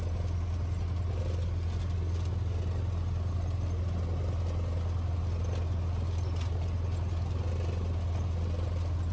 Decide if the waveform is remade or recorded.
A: recorded